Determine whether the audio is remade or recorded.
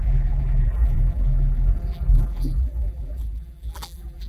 remade